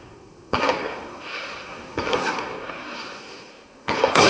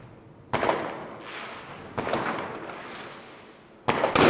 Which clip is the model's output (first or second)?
first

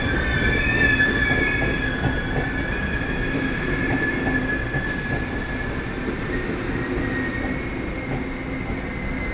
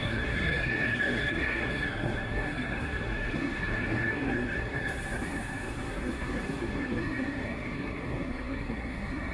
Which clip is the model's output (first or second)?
second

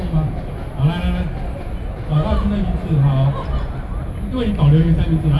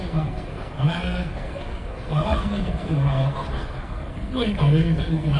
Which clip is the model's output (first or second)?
second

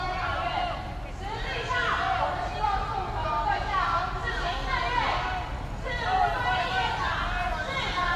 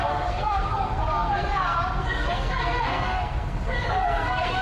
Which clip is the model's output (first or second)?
second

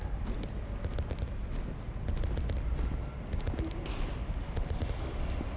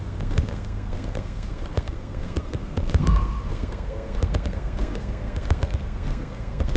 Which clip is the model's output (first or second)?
second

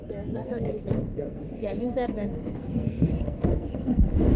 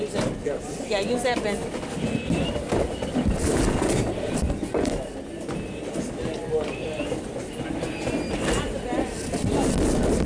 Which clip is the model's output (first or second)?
first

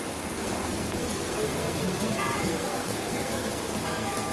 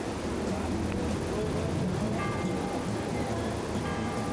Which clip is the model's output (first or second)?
first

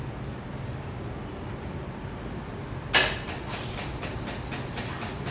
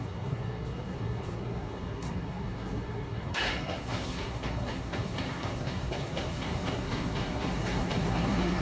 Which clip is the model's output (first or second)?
second